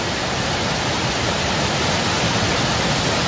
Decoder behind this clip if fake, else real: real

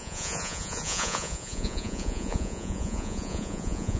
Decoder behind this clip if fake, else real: fake, vocoder, Vocos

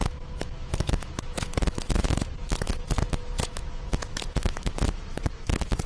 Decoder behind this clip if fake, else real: fake, autoencoder, DAC-VAE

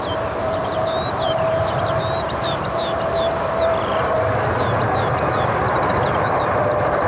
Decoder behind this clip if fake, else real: fake, vocoder, BigVGAN v2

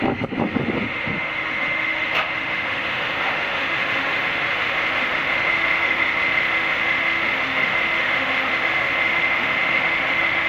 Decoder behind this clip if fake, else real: fake, autoencoder, DAC-VAE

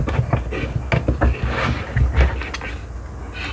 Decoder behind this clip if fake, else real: real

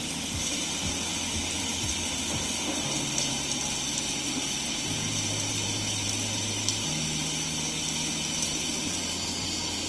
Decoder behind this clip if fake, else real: real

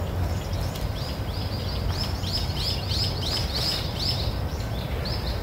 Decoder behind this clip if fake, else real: real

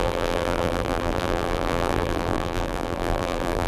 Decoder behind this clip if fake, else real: fake, vocoder, BigVGAN v2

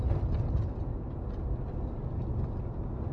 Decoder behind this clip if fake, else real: real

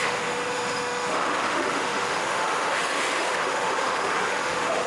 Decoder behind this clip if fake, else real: fake, autoencoder, DAC-VAE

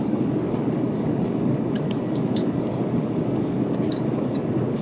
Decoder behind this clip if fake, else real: fake, codec, DAC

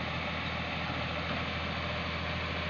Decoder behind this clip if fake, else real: real